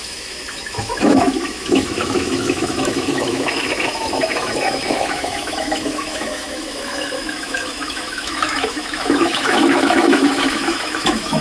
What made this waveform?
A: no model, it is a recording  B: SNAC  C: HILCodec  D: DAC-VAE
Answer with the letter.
D